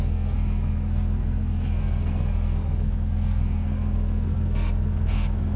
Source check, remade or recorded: remade